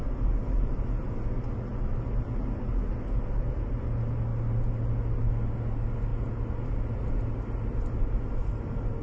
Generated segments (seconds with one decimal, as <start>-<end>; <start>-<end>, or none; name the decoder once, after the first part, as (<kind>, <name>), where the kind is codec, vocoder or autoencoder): none